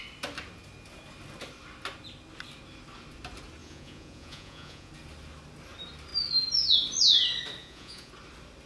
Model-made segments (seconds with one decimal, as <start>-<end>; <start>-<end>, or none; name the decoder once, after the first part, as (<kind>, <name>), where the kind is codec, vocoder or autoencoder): 3.6-4.9 (vocoder, Vocos); 7.6-8.1